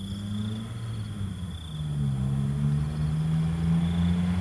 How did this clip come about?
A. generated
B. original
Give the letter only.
B